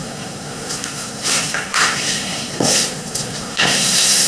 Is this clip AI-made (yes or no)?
yes